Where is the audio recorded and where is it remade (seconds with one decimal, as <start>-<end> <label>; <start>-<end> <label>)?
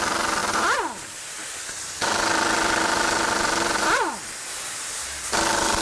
0.0-5.8 recorded